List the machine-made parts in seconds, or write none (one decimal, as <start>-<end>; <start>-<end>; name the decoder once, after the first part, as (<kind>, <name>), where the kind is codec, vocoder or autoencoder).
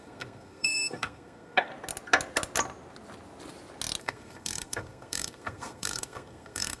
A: 0.0-1.7 (codec, SNAC); 4.0-6.8